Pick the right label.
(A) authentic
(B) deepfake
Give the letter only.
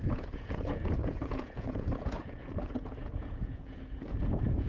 B